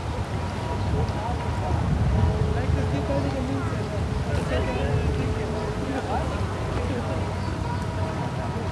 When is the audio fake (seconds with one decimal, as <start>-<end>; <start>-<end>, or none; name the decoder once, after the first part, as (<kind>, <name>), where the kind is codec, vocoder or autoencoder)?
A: 5.0-5.7 (vocoder, BigVGAN v2)

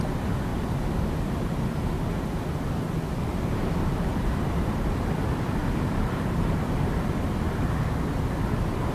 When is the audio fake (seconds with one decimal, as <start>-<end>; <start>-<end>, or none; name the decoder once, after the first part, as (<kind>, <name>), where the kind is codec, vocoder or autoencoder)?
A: 3.3-4.3 (vocoder, BigVGAN v2); 5.6-6.7

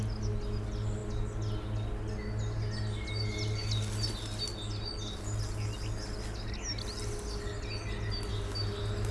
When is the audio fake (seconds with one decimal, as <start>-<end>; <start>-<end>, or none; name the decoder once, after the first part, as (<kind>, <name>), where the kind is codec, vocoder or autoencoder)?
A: none

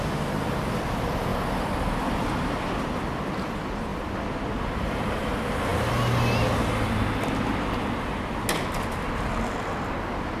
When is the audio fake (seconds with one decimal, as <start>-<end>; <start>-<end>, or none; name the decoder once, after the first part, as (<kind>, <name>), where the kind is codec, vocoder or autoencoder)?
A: 1.3-2.8 (vocoder, BigVGAN v2); 3.9-5.1

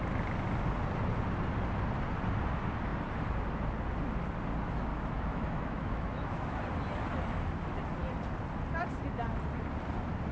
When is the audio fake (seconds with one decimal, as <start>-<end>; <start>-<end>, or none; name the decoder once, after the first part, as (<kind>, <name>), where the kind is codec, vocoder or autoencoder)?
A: 4.9-6.6 (autoencoder, DAC-VAE)

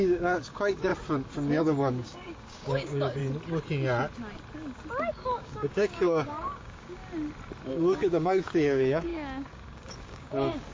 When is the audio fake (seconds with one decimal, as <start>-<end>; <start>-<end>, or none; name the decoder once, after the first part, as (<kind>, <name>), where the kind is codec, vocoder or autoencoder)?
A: 0.0-0.9 (codec, DAC); 1.6-3.2; 5.1-7.0; 7.7-10.7